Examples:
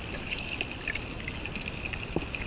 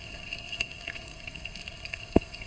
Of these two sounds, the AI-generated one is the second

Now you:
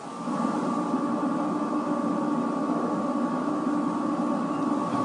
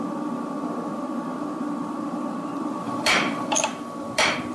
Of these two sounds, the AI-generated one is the second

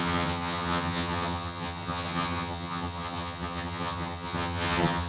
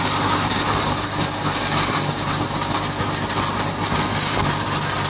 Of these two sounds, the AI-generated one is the first